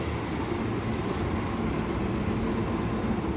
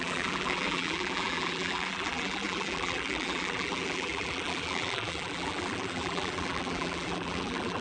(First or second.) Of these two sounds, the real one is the first